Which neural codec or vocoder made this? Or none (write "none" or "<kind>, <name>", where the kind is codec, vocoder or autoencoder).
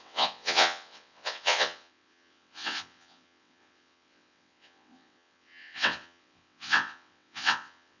vocoder, WaveNeXt